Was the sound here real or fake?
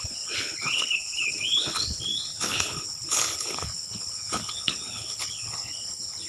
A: fake